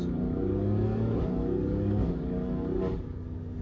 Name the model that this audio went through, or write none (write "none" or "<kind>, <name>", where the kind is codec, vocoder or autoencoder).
codec, DAC